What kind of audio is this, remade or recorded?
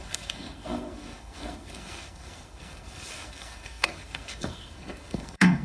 remade